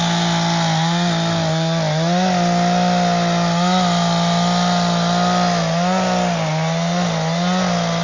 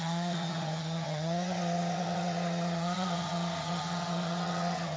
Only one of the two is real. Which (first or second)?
first